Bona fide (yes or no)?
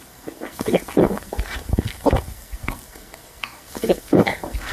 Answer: no